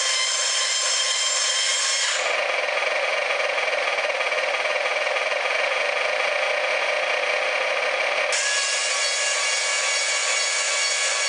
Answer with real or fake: real